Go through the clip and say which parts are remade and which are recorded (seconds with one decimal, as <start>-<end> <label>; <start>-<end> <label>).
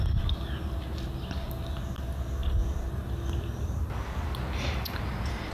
0.0-5.5 recorded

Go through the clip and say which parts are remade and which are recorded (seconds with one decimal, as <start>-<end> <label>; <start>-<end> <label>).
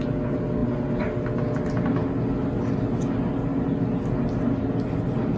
0.0-3.5 recorded; 3.5-4.0 remade; 4.0-5.4 recorded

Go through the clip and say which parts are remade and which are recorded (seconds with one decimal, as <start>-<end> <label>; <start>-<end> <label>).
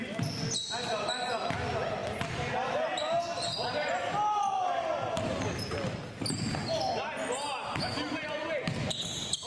0.0-9.5 recorded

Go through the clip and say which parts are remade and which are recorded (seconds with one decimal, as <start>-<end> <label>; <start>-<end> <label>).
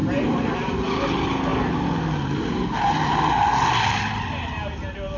0.0-0.7 remade; 0.7-5.2 recorded